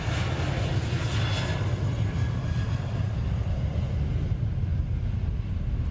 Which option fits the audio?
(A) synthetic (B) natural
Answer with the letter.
B